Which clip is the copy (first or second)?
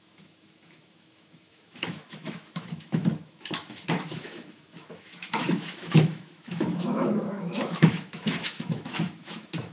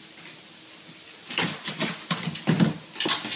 first